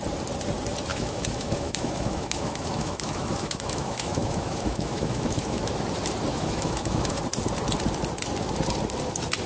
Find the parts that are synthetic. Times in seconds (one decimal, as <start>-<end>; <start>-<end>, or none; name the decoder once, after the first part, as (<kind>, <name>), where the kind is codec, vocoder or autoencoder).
0.9-5.7 (autoencoder, DAC-VAE); 6.3-7.2